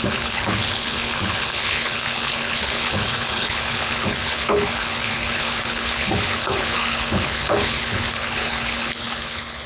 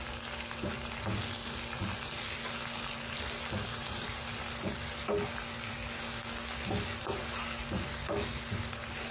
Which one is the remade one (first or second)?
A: first